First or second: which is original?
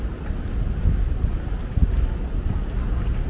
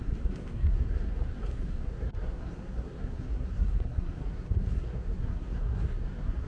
first